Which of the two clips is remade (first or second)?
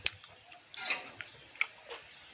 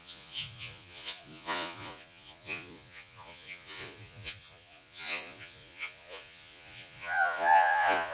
second